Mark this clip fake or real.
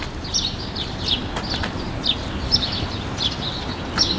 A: real